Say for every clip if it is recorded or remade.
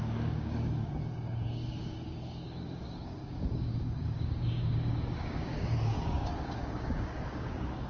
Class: remade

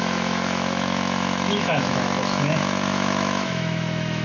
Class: remade